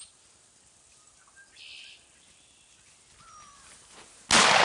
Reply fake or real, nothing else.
real